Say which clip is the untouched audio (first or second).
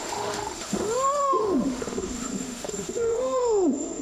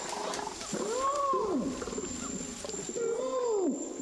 second